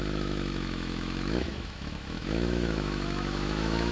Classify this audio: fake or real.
fake